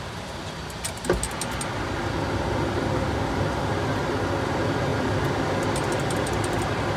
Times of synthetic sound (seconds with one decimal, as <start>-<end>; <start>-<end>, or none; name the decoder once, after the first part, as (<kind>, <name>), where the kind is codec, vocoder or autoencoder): none